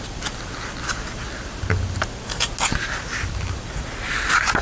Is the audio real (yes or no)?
yes